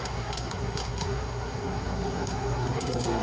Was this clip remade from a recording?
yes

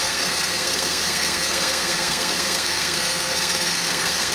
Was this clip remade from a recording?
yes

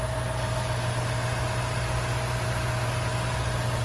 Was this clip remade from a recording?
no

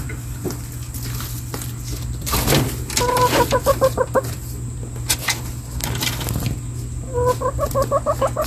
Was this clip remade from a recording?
no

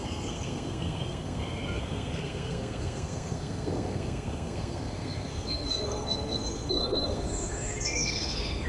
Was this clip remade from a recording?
yes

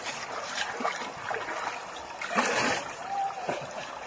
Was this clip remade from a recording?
no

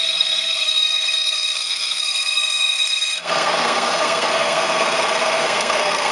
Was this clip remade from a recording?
yes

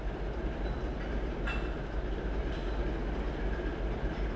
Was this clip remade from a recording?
no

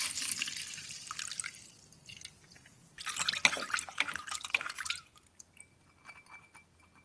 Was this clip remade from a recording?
no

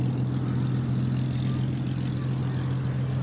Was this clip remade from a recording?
no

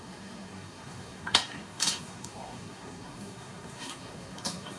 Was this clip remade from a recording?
yes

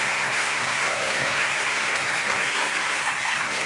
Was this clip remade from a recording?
yes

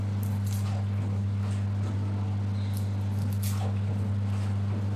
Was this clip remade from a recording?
no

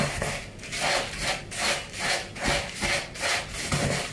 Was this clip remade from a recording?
no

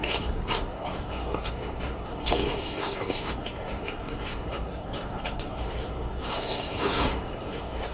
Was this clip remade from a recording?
yes